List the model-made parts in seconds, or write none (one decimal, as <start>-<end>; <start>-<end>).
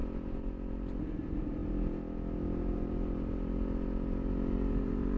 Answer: 1.1-1.6; 4.7-5.2